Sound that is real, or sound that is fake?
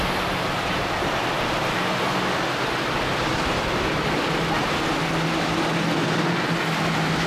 real